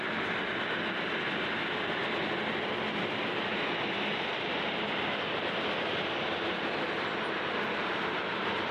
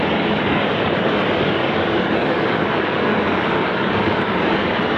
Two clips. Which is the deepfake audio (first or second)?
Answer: second